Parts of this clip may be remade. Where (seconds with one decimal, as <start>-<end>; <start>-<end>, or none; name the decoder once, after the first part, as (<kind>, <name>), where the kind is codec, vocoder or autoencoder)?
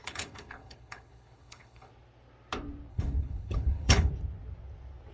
0.0-1.9 (codec, HILCodec); 2.9-4.1